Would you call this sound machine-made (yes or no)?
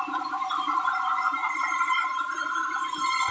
yes